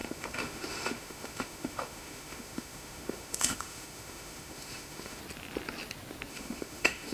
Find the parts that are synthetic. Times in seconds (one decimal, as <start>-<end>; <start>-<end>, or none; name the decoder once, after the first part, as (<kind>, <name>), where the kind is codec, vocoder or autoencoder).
0.0-5.2 (autoencoder, DAC-VAE); 6.3-7.1